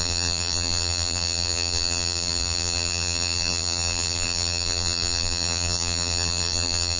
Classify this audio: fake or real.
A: fake